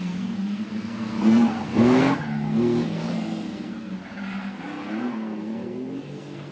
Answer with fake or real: fake